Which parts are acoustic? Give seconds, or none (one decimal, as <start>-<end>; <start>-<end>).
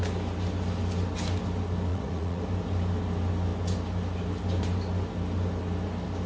0.0-1.9; 2.4-6.3